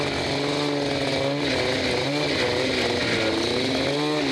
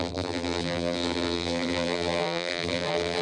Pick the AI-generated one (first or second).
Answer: second